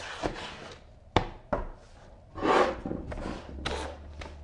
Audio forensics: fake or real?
real